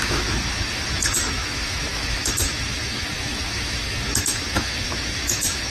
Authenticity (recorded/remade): remade